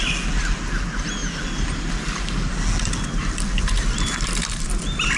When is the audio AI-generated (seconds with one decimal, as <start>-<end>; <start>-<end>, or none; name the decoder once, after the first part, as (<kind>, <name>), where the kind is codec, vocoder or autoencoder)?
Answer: none